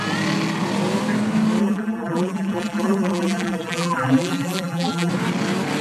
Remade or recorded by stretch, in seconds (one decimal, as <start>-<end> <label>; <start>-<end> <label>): 0.0-1.6 recorded; 1.6-5.1 remade; 5.1-5.8 recorded